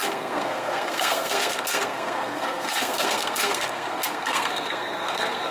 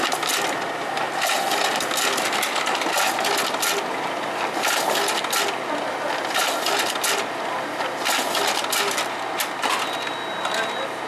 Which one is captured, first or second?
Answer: second